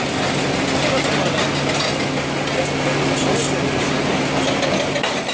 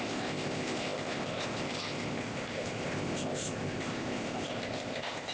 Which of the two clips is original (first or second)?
first